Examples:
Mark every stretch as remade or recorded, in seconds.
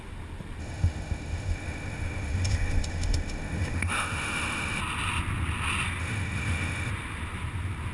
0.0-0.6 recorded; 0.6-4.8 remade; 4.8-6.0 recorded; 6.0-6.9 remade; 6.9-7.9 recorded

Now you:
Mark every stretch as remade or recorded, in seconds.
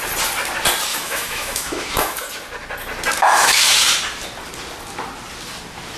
0.0-0.9 recorded; 0.9-2.3 remade; 2.3-3.2 recorded; 3.2-3.8 remade; 3.8-6.0 recorded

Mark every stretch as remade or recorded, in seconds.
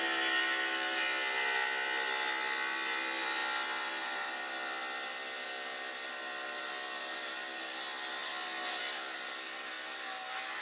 0.0-10.6 recorded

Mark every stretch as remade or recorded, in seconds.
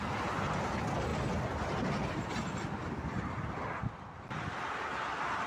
0.0-5.5 recorded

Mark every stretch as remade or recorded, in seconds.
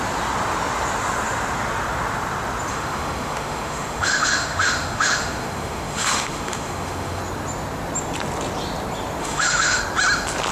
0.0-2.7 recorded; 2.7-7.2 remade; 7.2-9.2 recorded; 9.2-9.8 remade; 9.8-10.5 recorded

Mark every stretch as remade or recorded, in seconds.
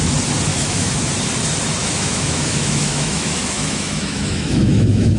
0.0-0.5 recorded; 0.5-1.1 remade; 1.1-1.8 recorded; 1.8-5.2 remade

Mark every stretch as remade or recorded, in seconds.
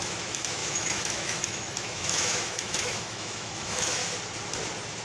0.0-4.0 remade; 4.0-5.0 recorded